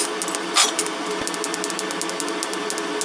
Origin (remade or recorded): recorded